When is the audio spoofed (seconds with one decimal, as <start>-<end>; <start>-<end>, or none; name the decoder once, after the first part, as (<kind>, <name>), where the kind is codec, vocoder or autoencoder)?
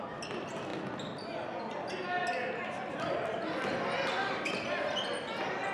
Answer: none